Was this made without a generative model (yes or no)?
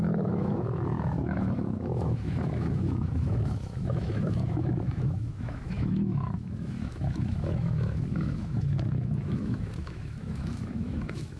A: no